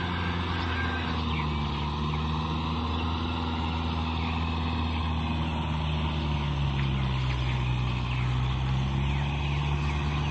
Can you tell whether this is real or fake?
real